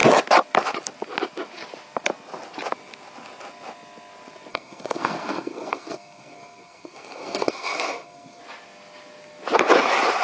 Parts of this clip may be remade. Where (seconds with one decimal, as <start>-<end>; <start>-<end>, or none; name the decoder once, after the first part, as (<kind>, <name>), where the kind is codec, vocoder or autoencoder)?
4.5-8.4 (codec, SNAC)